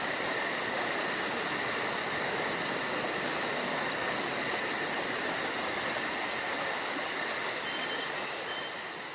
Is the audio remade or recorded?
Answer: recorded